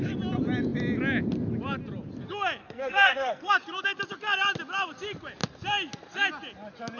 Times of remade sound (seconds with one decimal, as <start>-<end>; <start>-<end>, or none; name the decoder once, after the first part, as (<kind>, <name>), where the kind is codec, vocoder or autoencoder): 2.6-3.5 (codec, SNAC)